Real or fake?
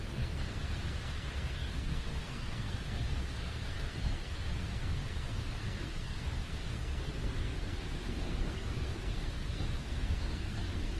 fake